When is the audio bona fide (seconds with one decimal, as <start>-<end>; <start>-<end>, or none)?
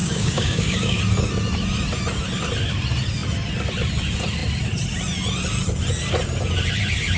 1.0-7.2